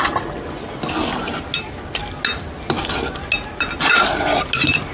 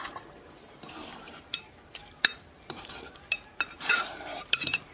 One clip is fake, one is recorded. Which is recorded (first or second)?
first